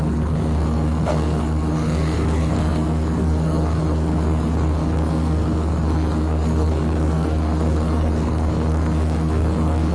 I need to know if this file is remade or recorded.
remade